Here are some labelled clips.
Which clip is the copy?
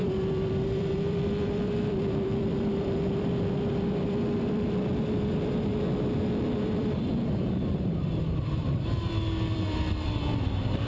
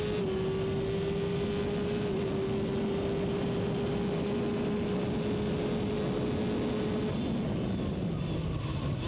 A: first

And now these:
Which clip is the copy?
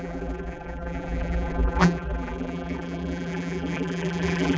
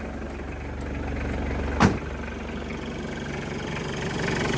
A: first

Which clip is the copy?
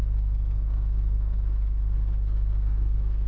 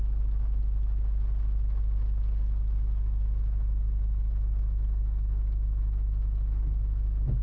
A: first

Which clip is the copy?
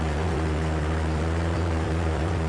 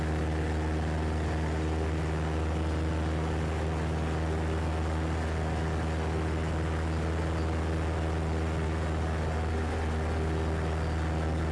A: first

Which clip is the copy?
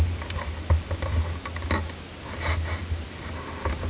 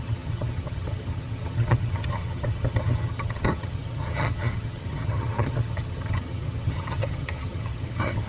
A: second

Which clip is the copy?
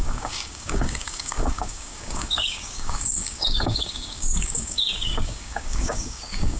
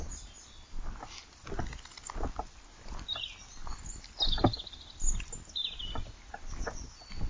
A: first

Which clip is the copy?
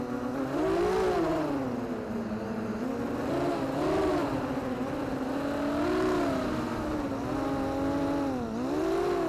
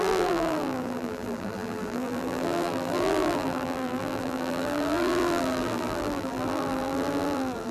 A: second